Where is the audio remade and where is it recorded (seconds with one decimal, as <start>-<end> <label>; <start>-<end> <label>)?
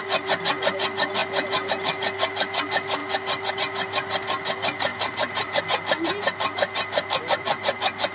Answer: 0.0-8.1 recorded